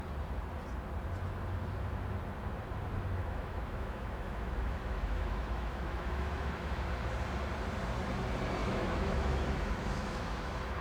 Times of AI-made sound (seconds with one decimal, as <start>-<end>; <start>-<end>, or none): 3.2-6.9; 8.6-10.8